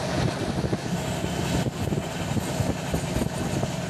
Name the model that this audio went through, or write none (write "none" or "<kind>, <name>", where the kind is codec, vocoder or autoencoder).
none